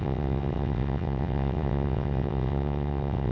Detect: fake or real fake